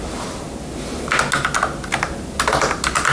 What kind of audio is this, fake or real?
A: real